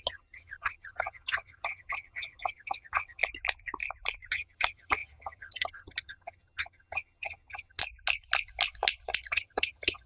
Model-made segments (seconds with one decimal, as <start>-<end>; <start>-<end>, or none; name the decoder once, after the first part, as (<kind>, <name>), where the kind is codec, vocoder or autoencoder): 0.0-3.2 (vocoder, HiFi-GAN); 4.3-7.8; 9.3-10.1